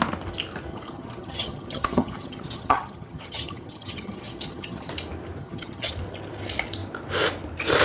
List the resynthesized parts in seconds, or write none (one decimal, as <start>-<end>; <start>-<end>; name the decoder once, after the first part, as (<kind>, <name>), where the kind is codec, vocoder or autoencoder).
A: 0.7-4.9 (vocoder, HiFi-GAN); 5.4-5.9